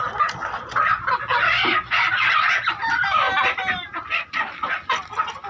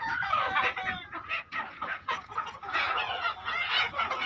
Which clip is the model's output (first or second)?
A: second